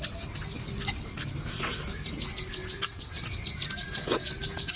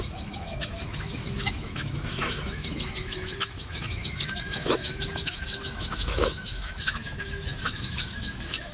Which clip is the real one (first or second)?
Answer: first